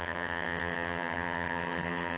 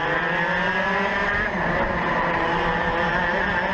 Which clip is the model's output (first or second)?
first